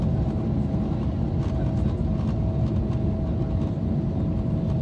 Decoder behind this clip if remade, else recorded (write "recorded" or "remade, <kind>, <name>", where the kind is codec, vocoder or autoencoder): recorded